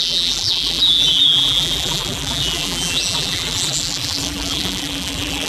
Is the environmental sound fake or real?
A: fake